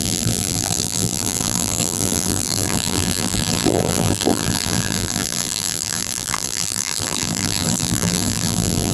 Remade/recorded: remade